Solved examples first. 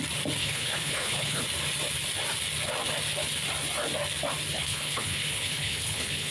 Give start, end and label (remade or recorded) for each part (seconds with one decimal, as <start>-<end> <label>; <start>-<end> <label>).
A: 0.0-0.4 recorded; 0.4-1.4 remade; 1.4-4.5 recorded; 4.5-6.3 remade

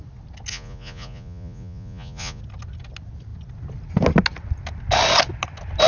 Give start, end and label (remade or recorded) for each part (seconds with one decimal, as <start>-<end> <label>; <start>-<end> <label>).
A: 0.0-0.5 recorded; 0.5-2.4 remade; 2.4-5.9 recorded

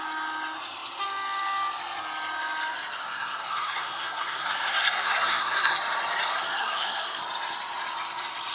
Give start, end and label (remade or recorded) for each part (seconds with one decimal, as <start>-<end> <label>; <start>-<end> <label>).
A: 0.0-3.0 recorded; 3.0-5.8 remade; 5.8-6.3 recorded; 6.3-7.2 remade; 7.2-8.5 recorded

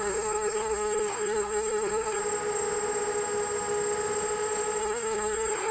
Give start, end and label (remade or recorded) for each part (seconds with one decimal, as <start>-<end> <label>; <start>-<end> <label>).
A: 0.0-2.2 remade; 2.2-4.8 recorded; 4.8-5.7 remade